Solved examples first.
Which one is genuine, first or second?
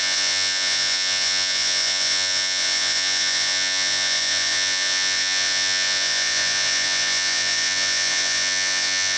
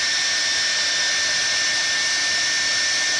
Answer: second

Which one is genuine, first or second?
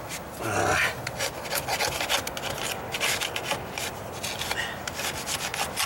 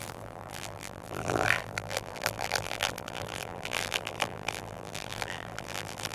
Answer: first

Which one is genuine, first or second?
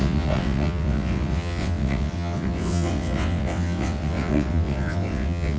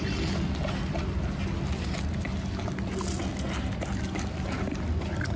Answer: second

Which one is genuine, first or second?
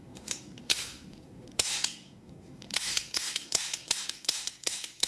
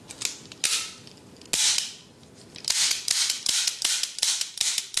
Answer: second